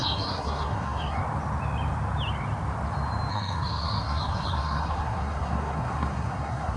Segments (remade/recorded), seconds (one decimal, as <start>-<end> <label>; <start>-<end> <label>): 0.0-1.2 remade; 1.2-3.3 recorded; 3.3-6.8 remade

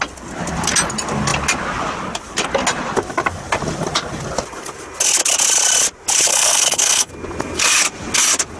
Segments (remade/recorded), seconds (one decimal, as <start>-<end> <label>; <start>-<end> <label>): 0.0-6.3 recorded; 6.3-7.1 remade; 7.1-8.6 recorded